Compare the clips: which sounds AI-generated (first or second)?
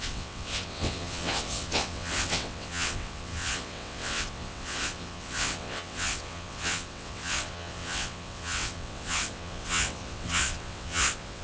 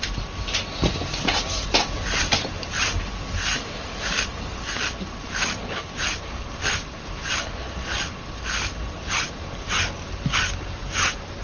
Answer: first